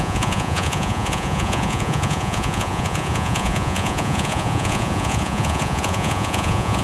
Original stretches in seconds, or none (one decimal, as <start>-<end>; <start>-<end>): none

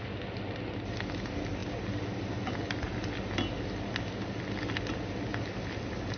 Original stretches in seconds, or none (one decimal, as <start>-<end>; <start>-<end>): 0.0-6.2

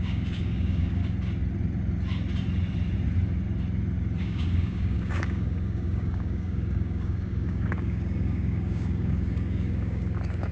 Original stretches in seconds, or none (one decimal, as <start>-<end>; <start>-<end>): 1.0-4.2

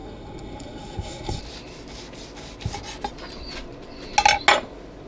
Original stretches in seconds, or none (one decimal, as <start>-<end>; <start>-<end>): 1.4-5.1